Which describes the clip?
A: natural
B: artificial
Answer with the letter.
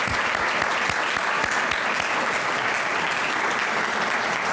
A